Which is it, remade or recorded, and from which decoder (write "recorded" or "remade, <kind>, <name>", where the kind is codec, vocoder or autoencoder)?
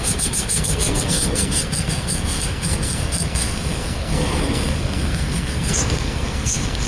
remade, codec, SNAC